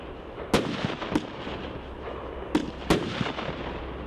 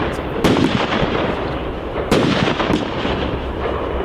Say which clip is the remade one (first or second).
second